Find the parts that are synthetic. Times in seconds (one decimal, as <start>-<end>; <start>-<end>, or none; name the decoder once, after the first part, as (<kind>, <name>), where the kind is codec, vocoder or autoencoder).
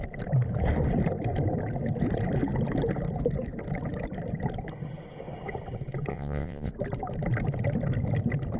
6.1-6.7 (vocoder, WaveNeXt)